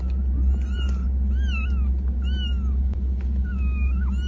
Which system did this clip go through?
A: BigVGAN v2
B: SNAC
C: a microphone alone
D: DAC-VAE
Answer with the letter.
C